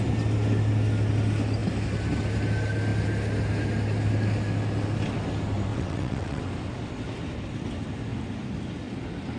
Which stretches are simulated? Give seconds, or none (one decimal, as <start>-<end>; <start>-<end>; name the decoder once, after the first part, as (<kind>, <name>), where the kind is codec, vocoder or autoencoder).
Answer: 5.7-6.4 (vocoder, WaveNeXt)